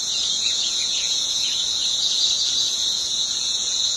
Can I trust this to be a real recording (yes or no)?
no